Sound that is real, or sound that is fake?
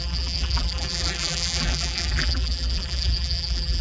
fake